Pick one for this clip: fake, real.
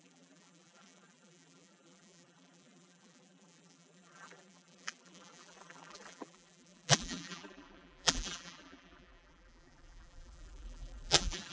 fake